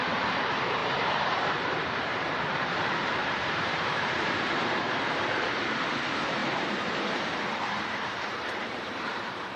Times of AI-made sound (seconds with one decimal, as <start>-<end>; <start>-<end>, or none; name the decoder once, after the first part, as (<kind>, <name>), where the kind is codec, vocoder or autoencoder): 0.0-9.6 (vocoder, BigVGAN v2)